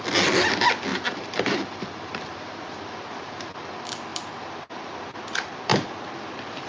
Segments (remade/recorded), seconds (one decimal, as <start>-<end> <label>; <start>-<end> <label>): 0.0-0.9 recorded; 0.9-2.2 remade; 2.2-6.7 recorded